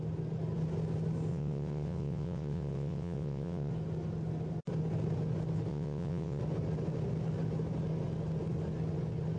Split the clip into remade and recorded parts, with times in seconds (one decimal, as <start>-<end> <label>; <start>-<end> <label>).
0.0-1.3 recorded; 1.3-3.7 remade; 3.7-5.7 recorded; 5.7-6.4 remade; 6.4-9.4 recorded